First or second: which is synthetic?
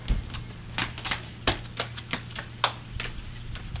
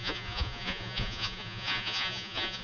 second